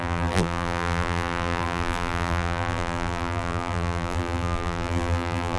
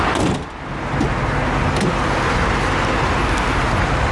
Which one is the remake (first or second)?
first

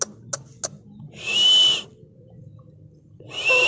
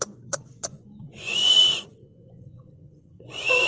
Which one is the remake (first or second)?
second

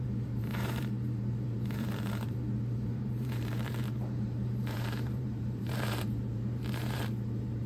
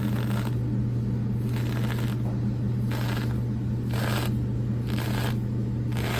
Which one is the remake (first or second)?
first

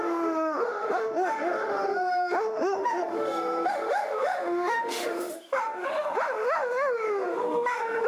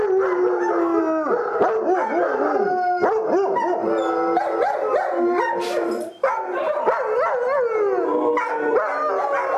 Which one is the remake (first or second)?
first